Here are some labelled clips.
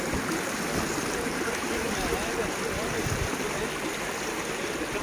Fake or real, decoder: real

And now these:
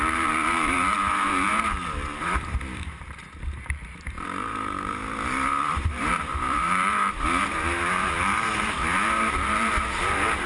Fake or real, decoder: fake, vocoder, BigVGAN v2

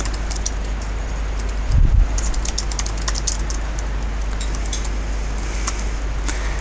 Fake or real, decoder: real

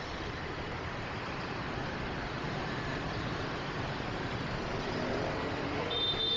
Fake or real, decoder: fake, vocoder, BigVGAN v2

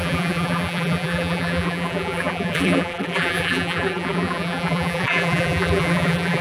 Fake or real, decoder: fake, vocoder, BigVGAN v2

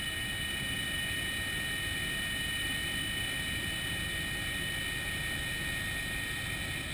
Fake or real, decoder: real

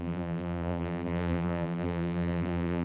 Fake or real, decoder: fake, vocoder, BigVGAN v2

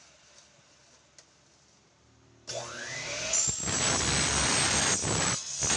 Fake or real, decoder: real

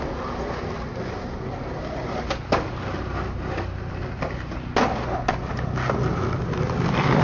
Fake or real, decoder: real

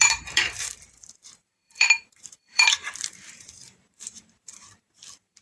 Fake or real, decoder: fake, vocoder, BigVGAN v2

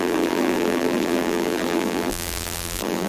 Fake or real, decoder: fake, vocoder, BigVGAN v2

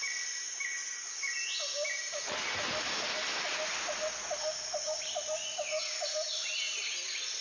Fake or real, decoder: real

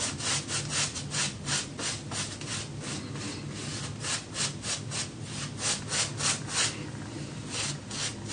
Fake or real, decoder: real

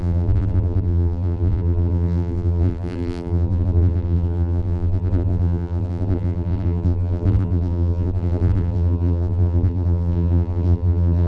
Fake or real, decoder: fake, vocoder, BigVGAN v2